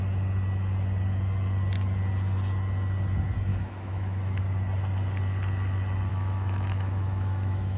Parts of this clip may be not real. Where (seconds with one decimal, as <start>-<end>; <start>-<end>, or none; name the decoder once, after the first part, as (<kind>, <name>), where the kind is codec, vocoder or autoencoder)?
3.5-4.4 (autoencoder, DAC-VAE); 6.1-7.8